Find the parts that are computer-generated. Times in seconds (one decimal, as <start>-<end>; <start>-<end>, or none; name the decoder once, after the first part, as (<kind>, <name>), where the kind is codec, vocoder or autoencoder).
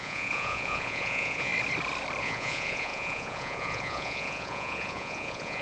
0.0-1.5 (vocoder, Vocos); 2.2-5.6